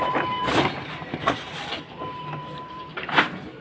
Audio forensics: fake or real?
fake